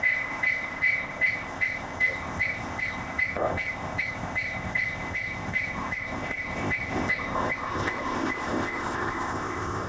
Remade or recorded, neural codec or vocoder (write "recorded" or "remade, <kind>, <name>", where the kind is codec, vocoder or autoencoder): remade, codec, ZipCodec